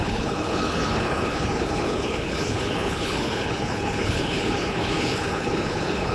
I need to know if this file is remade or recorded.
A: remade